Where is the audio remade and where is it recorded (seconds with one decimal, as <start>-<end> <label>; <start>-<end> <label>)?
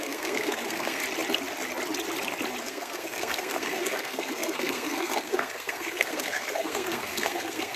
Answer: 0.0-1.0 remade; 1.0-2.6 recorded; 2.6-7.8 remade